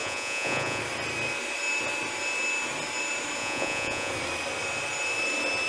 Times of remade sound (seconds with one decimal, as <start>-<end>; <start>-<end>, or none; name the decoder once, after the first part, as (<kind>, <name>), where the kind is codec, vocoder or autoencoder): 0.0-0.8 (vocoder, Vocos); 3.4-4.1